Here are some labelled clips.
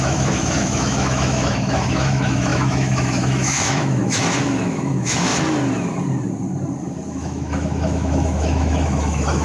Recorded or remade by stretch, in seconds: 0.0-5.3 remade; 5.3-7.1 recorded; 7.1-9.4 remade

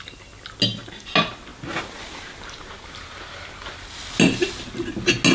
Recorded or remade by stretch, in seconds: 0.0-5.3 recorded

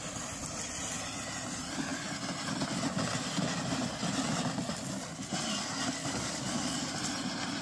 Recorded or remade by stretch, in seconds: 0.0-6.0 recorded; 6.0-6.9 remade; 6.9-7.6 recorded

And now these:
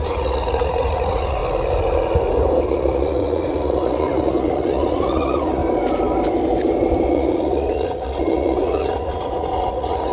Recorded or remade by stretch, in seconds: 0.0-1.4 remade; 1.4-2.7 recorded; 2.7-5.6 remade; 5.6-7.1 recorded; 7.1-10.1 remade

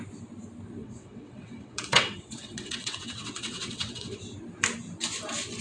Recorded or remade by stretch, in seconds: 0.0-0.8 recorded; 0.8-4.2 remade; 4.2-5.6 recorded

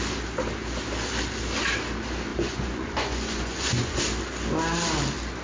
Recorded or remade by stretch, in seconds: 0.0-2.3 recorded; 2.3-4.0 remade; 4.0-5.4 recorded